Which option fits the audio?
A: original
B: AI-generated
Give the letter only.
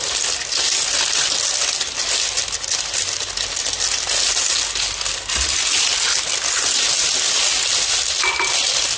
A